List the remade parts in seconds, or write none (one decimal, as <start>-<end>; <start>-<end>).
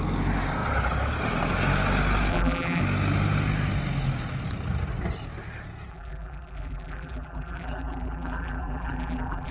2.3-2.8; 5.9-9.5